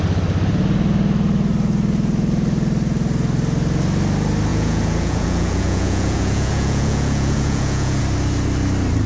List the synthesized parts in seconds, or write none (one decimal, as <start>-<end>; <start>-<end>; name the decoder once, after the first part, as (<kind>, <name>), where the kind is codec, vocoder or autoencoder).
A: 4.5-8.0 (vocoder, Vocos)